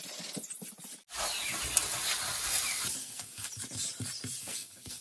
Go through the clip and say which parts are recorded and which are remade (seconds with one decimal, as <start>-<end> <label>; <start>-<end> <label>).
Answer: 0.0-3.0 recorded; 3.0-3.5 remade; 3.5-4.4 recorded; 4.4-5.0 remade